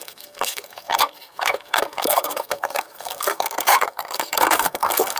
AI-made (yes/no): yes